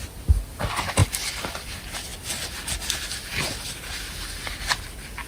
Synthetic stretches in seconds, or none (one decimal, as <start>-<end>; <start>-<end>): 1.0-1.7